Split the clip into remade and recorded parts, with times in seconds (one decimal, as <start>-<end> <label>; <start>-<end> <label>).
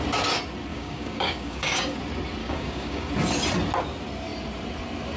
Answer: 0.0-0.7 recorded; 0.7-2.0 remade; 2.0-2.4 recorded; 2.4-3.1 remade; 3.1-5.2 recorded